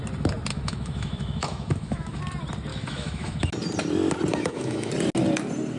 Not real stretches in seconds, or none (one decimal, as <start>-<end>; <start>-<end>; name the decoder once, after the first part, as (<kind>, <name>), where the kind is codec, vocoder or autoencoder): 0.5-2.2 (autoencoder, DAC-VAE); 2.7-3.5; 4.3-4.9